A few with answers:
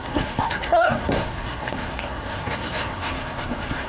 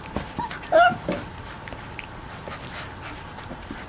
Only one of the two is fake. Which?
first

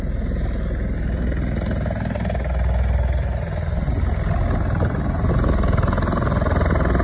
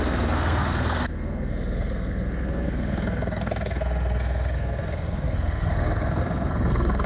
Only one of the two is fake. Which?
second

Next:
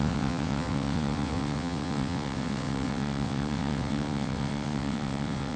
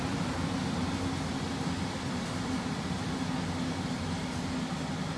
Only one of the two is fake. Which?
first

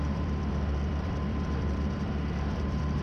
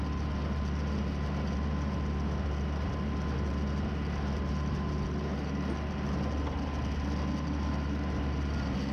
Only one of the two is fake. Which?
first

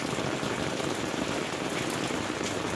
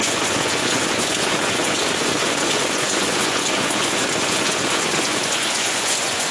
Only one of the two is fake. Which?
second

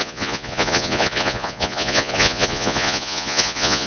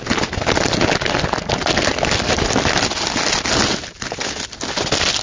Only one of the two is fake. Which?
first